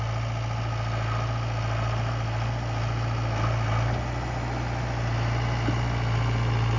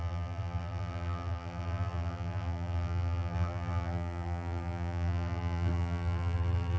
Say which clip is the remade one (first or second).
second